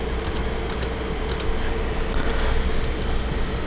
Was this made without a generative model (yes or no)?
yes